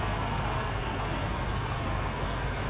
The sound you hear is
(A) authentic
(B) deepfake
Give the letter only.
B